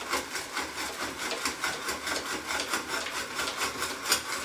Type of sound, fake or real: real